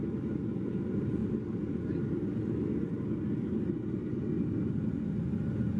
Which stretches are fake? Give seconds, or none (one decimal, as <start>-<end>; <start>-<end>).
none